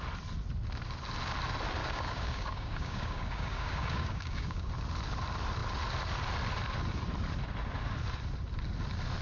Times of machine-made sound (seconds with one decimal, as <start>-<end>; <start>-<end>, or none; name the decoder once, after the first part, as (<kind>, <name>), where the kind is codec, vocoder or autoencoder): 1.8-4.7 (codec, DAC)